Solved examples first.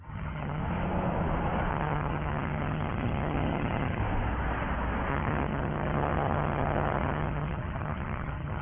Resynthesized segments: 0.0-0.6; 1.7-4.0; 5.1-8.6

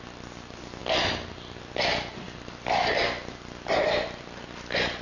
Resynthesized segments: none

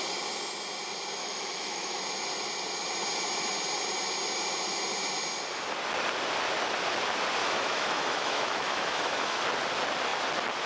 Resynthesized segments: 1.2-2.0; 7.4-9.4